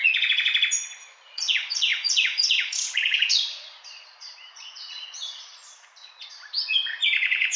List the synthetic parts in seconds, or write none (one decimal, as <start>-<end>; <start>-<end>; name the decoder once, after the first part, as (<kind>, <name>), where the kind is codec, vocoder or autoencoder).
0.0-0.5 (vocoder, Vocos); 1.3-7.6